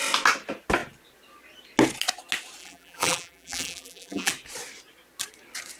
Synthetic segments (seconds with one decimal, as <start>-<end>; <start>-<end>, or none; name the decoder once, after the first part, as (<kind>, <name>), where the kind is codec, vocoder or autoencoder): 2.6-4.3 (vocoder, BigVGAN v2)